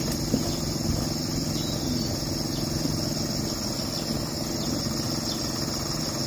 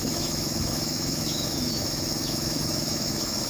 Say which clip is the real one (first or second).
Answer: first